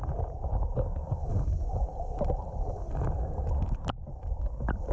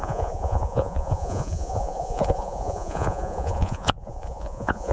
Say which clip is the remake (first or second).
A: second